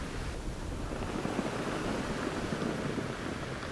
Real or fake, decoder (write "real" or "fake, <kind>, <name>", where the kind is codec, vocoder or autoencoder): real